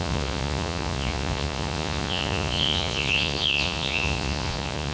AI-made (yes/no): yes